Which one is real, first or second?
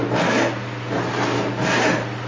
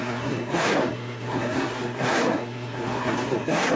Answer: first